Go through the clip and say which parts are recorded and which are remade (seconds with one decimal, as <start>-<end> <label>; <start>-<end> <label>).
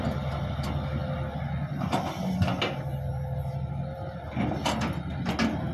0.0-5.7 recorded